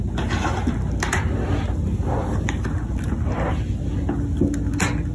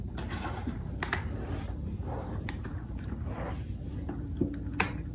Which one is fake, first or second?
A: second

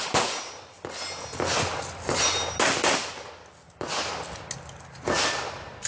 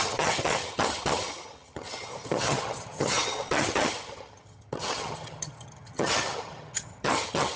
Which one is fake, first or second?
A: second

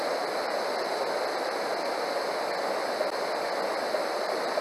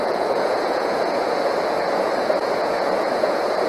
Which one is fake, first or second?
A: second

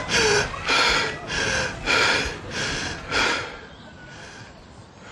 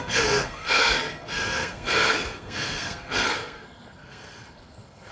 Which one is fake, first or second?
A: second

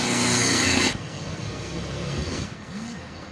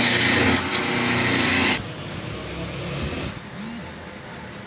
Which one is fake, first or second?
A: first